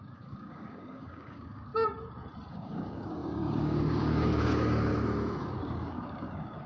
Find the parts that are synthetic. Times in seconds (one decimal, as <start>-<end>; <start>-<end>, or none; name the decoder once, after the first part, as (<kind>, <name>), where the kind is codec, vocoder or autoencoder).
0.0-1.7 (codec, DAC); 2.5-4.9; 5.4-6.7